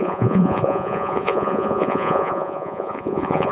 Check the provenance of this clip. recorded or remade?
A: remade